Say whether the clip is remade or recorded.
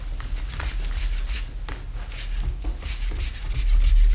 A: recorded